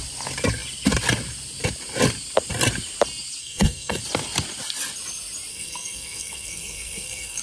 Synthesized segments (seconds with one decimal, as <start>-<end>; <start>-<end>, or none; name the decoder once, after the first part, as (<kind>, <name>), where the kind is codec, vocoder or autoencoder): 3.4-4.0 (codec, SNAC); 5.5-7.4